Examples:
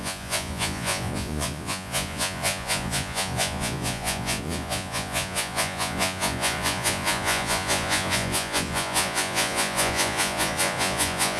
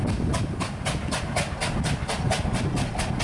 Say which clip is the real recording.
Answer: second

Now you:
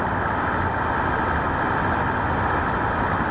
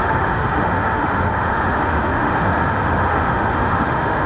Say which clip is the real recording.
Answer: first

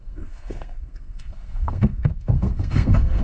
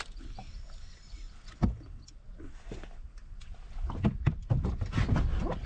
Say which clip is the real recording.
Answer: second